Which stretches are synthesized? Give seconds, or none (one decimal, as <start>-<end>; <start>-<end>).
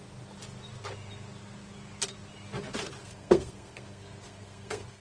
3.0-5.0